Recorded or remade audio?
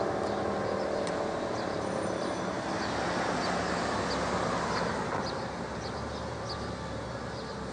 recorded